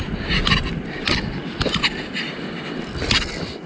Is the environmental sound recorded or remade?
recorded